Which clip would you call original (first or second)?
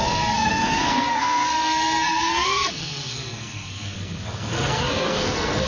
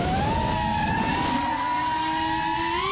second